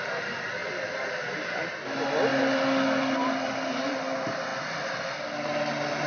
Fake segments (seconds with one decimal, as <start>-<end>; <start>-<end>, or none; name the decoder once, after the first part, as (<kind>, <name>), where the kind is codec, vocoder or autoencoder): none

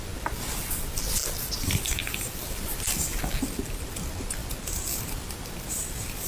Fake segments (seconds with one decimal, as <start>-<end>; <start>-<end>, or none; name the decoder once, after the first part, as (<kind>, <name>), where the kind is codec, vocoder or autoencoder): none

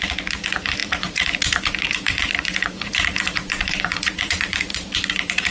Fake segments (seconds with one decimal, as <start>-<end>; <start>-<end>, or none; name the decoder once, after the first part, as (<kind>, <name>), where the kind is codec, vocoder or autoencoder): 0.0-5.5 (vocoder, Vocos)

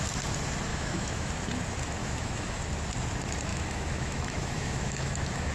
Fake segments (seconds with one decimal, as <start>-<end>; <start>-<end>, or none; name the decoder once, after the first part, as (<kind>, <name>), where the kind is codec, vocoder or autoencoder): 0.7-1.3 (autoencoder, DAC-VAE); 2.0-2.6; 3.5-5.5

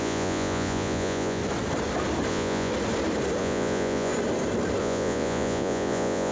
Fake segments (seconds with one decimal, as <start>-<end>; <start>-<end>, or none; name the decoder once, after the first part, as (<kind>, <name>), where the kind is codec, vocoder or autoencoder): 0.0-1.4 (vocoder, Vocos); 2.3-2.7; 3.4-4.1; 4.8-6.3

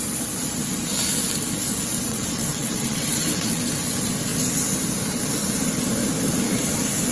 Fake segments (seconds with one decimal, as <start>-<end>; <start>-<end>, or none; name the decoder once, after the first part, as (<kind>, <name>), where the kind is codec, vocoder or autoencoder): 2.1-3.6 (vocoder, WaveNeXt)

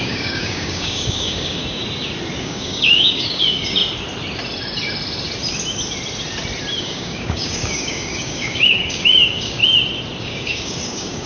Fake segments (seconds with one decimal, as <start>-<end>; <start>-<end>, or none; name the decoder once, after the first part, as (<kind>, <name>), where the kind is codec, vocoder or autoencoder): 0.0-1.8 (codec, DAC); 2.4-3.8; 6.8-9.6; 10.2-11.3